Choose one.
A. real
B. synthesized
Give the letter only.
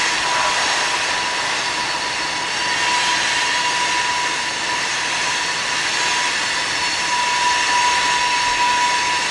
A